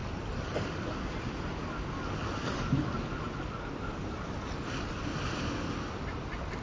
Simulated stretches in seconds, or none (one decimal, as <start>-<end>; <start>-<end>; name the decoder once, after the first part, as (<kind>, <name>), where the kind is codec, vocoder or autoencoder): none